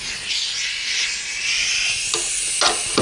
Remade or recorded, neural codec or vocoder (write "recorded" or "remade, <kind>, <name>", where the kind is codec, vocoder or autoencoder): recorded